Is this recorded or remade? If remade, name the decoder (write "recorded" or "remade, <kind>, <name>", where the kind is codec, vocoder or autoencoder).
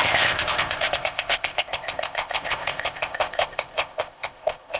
remade, codec, ZipCodec